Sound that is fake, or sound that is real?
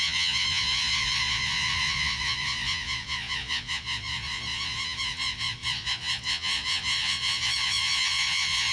fake